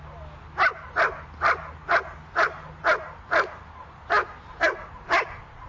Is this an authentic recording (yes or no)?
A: yes